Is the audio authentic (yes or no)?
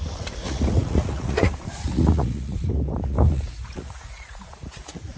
no